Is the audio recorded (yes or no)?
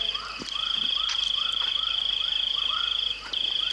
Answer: no